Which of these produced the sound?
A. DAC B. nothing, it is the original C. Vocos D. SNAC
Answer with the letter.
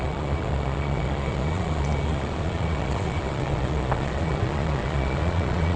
C